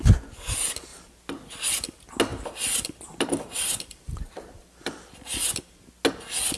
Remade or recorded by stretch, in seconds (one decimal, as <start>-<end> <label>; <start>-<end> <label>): 0.0-2.3 recorded; 2.3-5.6 remade; 5.6-6.6 recorded